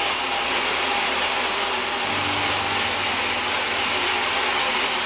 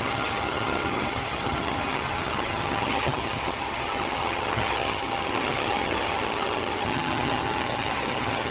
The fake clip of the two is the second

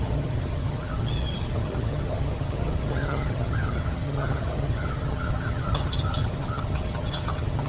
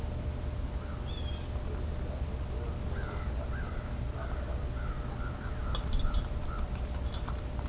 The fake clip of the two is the first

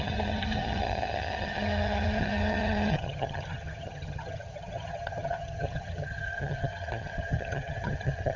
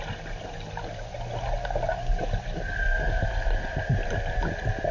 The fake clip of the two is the first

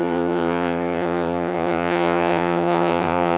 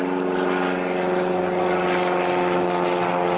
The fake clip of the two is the first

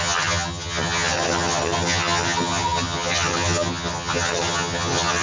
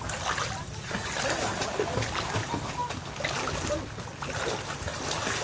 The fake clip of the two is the first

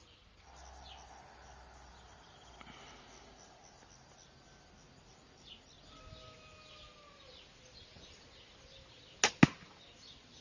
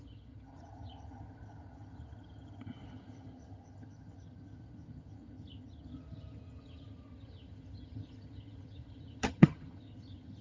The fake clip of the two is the second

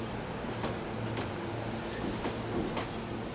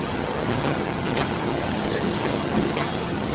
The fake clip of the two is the second